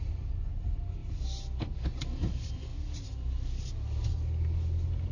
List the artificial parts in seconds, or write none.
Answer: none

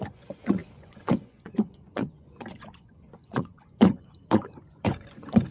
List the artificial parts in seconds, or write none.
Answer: 0.0-5.5

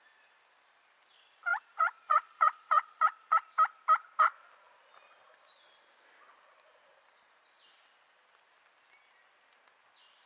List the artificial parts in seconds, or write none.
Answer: 1.5-3.5

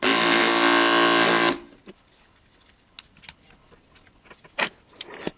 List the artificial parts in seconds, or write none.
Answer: none